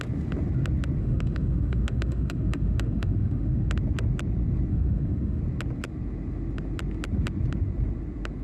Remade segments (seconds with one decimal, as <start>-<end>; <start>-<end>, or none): 1.0-3.7; 4.7-5.4